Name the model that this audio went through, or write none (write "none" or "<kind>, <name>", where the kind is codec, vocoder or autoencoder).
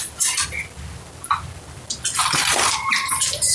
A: none